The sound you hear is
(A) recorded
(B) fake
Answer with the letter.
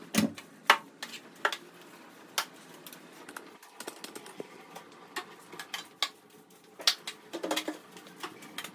A